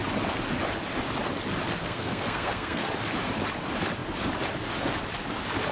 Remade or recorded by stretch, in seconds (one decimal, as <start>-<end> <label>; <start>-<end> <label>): 0.0-1.8 recorded; 1.8-2.9 remade; 2.9-5.7 recorded